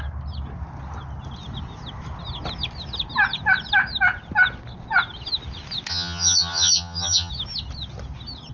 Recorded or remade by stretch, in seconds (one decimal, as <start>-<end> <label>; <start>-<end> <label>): 0.0-5.9 recorded; 5.9-7.3 remade; 7.3-8.5 recorded